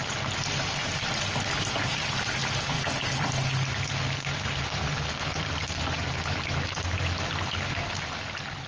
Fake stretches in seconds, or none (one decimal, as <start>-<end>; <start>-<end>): none